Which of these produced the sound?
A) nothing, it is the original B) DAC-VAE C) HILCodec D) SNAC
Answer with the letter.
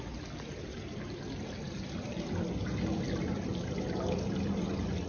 A